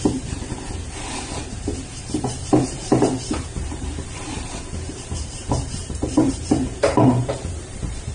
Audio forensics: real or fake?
fake